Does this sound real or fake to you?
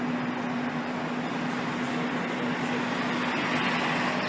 real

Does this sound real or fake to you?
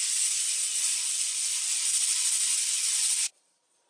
fake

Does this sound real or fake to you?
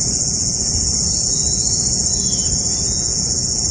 fake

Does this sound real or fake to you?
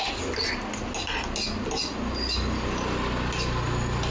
real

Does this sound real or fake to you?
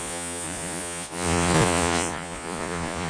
fake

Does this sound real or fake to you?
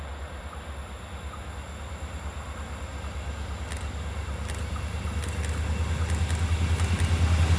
real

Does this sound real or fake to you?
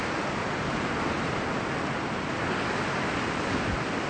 real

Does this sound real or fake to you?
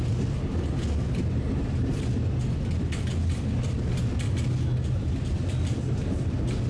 real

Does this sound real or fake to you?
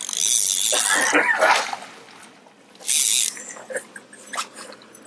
real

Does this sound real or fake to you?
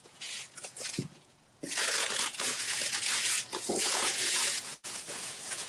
fake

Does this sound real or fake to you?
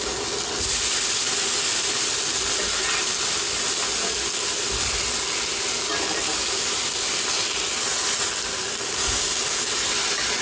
real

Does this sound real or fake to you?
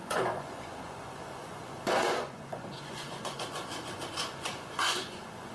fake